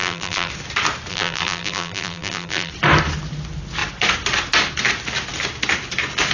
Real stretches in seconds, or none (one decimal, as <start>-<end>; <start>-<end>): 0.5-1.1; 2.7-6.3